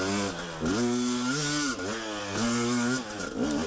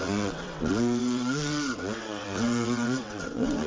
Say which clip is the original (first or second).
first